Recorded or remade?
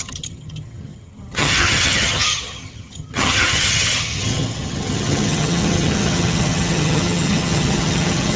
remade